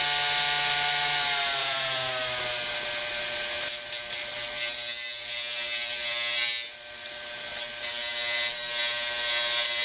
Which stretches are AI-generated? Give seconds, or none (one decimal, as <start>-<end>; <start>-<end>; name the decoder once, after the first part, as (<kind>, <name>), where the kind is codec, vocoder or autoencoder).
1.6-2.1 (vocoder, Vocos)